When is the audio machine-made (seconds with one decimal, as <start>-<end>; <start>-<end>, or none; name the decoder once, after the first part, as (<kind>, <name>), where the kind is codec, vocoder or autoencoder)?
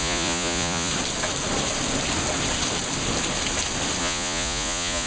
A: 0.0-0.9 (vocoder, Vocos); 4.0-5.1